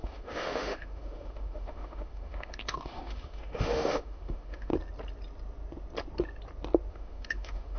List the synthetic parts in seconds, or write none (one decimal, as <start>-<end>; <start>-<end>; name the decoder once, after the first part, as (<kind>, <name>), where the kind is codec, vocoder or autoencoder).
0.0-4.7 (autoencoder, DAC-VAE); 6.9-7.8